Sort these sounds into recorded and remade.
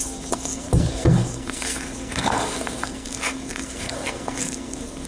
remade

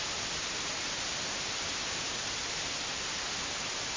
recorded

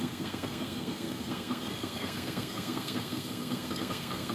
remade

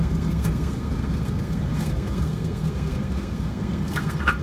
remade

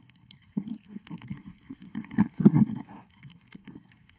remade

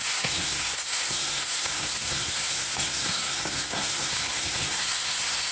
remade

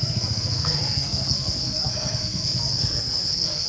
remade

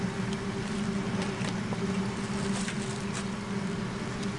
recorded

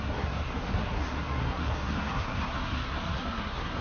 remade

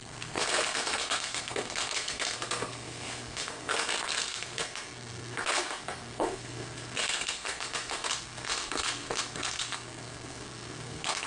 remade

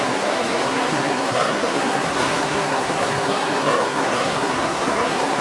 remade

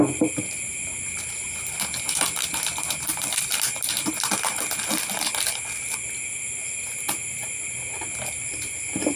recorded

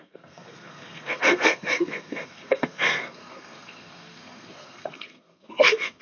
remade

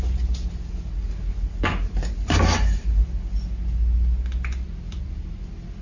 recorded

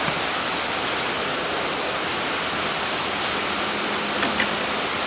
recorded